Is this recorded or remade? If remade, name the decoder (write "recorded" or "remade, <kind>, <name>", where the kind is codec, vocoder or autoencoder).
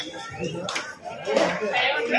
recorded